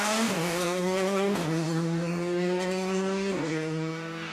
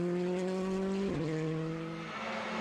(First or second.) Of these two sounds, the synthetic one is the first